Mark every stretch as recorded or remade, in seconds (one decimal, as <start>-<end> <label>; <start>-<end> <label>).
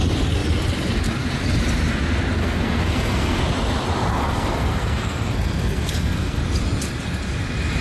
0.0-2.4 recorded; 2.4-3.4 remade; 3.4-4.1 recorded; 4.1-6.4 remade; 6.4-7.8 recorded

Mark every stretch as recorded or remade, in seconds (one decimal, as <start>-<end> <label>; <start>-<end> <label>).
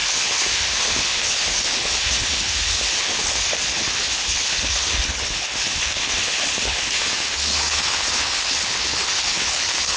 0.0-10.0 remade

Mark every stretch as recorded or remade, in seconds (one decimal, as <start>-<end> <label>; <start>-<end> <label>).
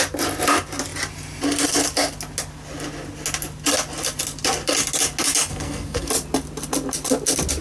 0.0-5.5 recorded; 5.5-6.1 remade; 6.1-7.6 recorded